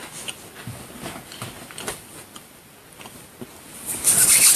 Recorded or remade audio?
recorded